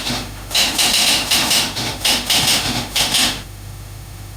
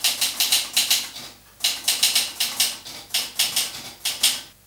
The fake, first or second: first